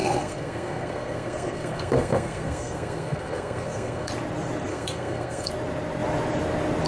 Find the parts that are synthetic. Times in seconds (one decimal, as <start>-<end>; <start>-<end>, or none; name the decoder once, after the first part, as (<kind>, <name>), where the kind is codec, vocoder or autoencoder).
0.0-4.1 (codec, SNAC); 4.7-5.5